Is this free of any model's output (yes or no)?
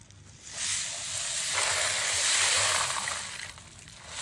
yes